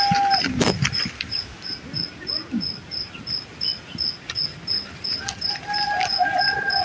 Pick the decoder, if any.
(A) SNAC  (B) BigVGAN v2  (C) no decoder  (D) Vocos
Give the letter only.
C